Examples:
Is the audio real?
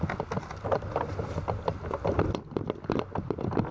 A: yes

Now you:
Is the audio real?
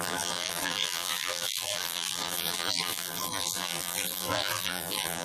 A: no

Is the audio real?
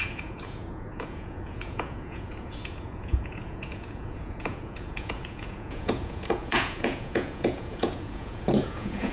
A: no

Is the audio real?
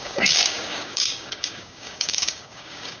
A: no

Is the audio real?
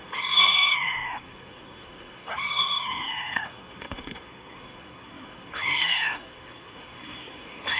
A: no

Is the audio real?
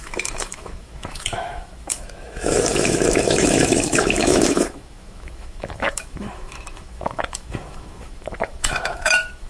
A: no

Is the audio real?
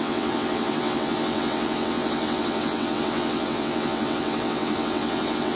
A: no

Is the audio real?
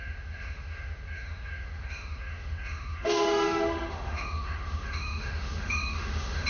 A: no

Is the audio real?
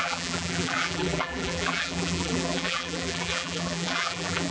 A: no